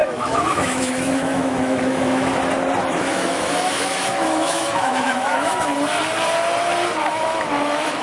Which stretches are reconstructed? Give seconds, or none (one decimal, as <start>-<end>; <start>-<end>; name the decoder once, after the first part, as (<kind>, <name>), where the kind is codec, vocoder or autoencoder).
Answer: 0.0-2.3 (autoencoder, DAC-VAE); 2.9-5.7; 7.0-8.0